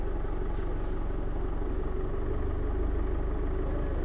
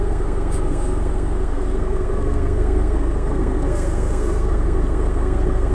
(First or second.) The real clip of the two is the first